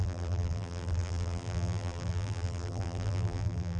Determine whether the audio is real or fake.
fake